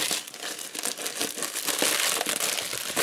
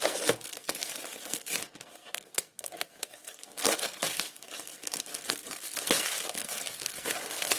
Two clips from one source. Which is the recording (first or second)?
first